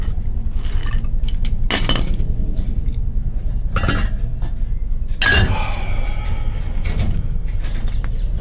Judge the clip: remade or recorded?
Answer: recorded